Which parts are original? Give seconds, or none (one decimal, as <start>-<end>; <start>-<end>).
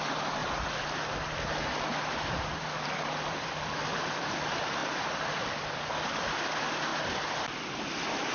0.0-0.4; 4.3-4.8; 6.0-6.9